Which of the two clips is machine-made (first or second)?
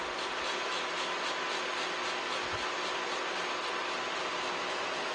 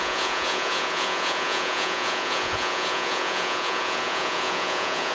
second